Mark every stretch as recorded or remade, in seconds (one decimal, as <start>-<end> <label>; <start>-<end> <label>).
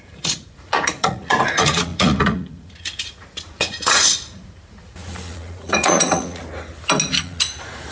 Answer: 0.0-6.4 remade; 6.4-7.2 recorded; 7.2-7.9 remade